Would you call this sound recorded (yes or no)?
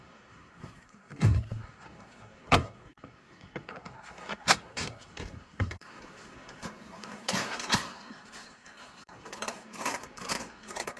no